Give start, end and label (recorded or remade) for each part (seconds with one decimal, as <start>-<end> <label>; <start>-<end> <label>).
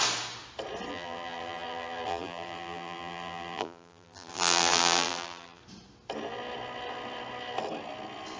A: 0.0-0.9 recorded; 0.9-5.6 remade; 5.6-8.4 recorded